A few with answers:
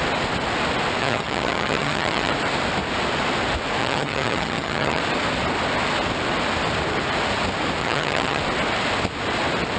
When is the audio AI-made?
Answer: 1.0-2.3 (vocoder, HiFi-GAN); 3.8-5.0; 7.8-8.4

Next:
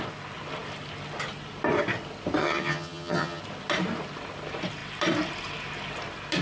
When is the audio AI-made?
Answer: 2.4-3.4 (vocoder, HiFi-GAN)